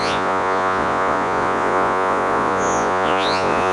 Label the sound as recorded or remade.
remade